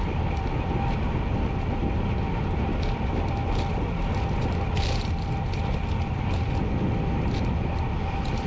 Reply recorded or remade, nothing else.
recorded